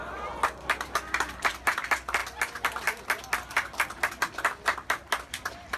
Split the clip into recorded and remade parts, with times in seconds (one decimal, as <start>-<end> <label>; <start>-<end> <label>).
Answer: 0.0-5.8 recorded